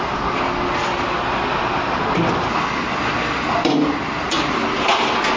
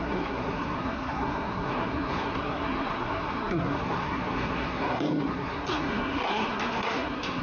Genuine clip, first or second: first